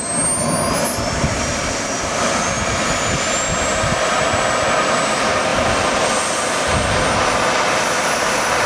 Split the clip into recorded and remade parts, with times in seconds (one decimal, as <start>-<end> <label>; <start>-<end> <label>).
0.0-5.5 recorded; 5.5-6.6 remade; 6.6-8.7 recorded